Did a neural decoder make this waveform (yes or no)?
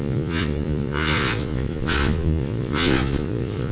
yes